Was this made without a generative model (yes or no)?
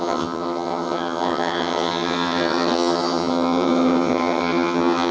no